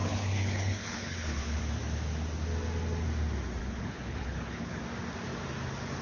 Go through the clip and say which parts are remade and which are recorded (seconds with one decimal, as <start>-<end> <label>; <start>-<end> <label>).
0.0-1.6 remade; 1.6-3.6 recorded; 3.6-4.8 remade; 4.8-6.0 recorded